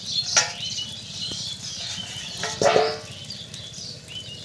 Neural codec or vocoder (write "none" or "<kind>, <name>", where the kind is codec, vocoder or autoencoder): none